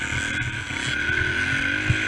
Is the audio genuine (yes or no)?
yes